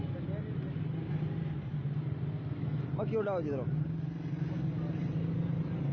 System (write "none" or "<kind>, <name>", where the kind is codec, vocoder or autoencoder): none